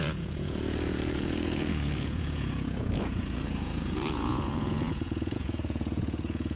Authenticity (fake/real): fake